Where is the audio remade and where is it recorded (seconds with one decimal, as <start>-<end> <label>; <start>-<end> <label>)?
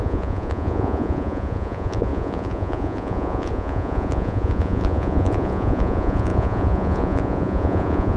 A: 0.0-8.2 remade